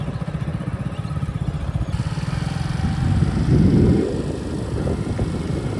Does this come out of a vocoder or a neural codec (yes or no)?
no